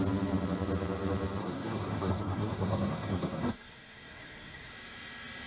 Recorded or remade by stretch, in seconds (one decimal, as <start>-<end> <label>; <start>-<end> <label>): 0.0-1.4 recorded; 1.4-4.7 remade; 4.7-5.5 recorded